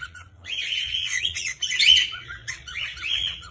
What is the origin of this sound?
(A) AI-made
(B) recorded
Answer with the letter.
A